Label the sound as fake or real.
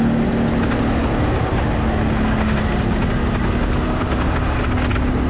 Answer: real